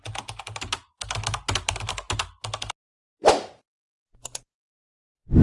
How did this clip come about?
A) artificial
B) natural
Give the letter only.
B